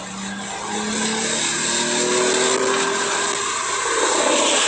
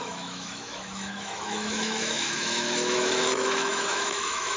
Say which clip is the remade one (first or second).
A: second